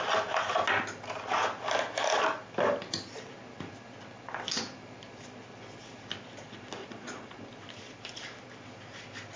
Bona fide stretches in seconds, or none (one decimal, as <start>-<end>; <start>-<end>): 0.0-6.8; 7.4-9.4

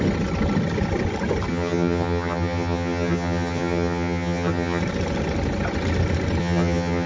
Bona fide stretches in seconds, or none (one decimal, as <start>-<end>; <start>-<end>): 0.0-1.5; 4.8-6.4